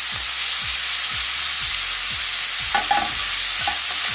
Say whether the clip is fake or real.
real